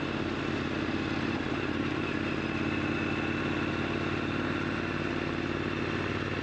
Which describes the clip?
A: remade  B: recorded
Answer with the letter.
B